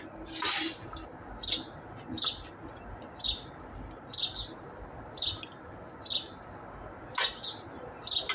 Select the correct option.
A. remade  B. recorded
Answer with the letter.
B